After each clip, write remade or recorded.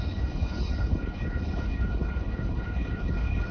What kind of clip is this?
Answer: remade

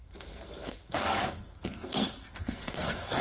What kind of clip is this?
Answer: remade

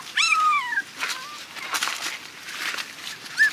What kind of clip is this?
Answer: recorded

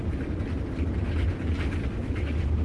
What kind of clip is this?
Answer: recorded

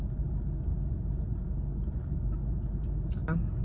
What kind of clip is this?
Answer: recorded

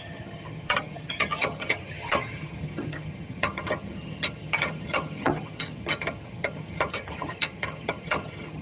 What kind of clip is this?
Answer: remade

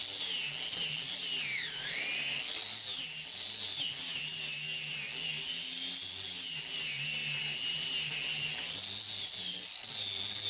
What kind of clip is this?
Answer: recorded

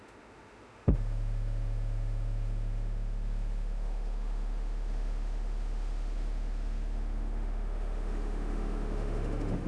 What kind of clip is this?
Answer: remade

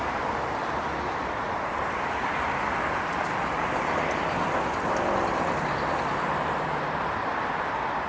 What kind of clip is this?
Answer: recorded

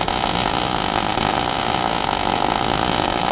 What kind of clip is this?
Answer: recorded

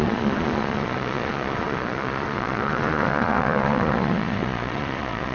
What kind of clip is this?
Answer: remade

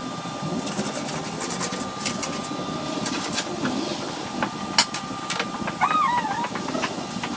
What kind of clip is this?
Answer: recorded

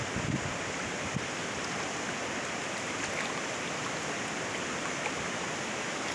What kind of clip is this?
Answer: recorded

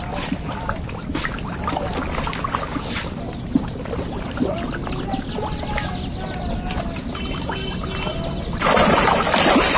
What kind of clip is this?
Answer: recorded